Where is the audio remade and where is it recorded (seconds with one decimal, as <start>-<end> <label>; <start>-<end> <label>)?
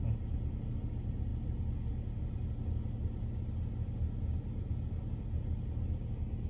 0.0-6.5 recorded